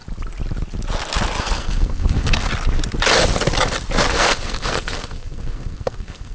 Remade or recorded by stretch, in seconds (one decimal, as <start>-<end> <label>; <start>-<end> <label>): 0.0-1.4 recorded; 1.4-2.5 remade; 2.5-4.1 recorded; 4.1-6.3 remade